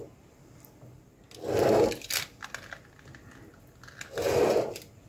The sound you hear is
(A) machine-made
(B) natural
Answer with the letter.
B